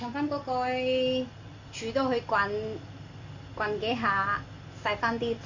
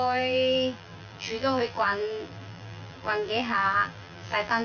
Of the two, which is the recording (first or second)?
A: first